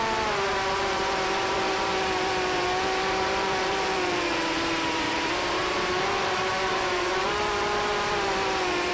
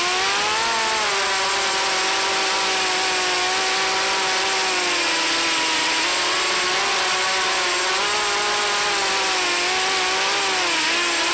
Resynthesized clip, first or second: first